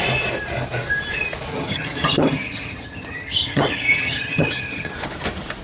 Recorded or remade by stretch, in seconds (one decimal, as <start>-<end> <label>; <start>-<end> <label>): 0.0-1.5 recorded; 1.5-4.9 remade; 4.9-5.6 recorded